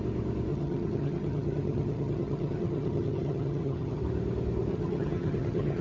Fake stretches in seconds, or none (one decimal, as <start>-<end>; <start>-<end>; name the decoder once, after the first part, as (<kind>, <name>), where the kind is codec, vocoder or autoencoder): 0.5-4.0 (vocoder, HiFi-GAN); 4.7-5.8